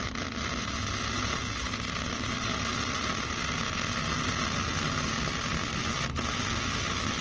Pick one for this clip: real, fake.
real